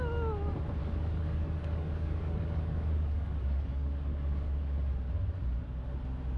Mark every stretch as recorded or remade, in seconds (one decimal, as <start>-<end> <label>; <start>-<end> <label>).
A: 0.0-0.8 recorded; 0.8-4.6 remade; 4.6-6.4 recorded